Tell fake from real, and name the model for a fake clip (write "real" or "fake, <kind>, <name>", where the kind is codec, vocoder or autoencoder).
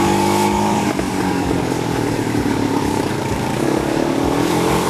fake, codec, DAC